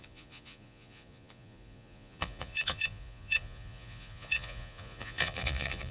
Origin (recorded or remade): remade